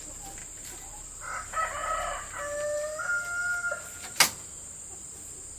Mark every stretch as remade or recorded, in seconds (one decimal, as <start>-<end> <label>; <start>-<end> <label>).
0.0-5.6 recorded